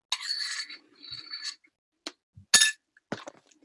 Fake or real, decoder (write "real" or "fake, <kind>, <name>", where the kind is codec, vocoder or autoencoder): real